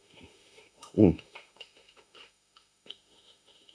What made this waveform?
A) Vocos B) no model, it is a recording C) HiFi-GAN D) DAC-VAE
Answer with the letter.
D